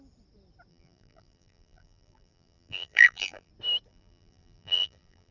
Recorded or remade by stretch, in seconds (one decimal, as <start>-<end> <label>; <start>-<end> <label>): 0.0-0.7 recorded; 0.7-3.5 remade; 3.5-3.9 recorded; 3.9-5.3 remade